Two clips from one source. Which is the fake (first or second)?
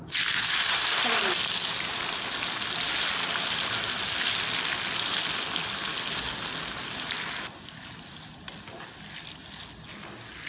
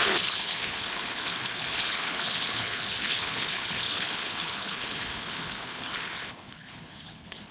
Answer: second